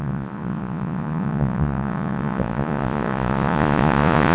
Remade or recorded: remade